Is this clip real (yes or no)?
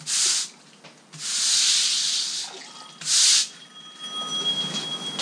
yes